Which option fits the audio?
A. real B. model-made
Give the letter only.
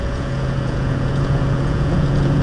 B